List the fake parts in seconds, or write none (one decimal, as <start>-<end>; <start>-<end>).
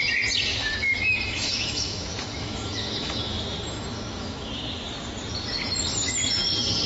0.5-4.5